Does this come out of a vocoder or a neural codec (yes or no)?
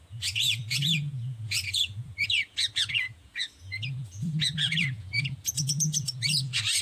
yes